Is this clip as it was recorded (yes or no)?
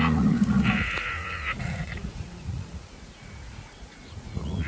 no